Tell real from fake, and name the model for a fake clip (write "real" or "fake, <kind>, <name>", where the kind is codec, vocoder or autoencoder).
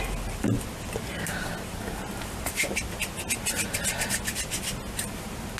real